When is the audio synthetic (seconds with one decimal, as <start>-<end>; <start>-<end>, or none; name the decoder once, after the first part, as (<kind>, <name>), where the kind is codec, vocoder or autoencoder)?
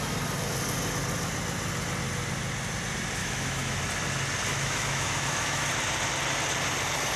3.2-3.8 (autoencoder, DAC-VAE); 4.5-5.7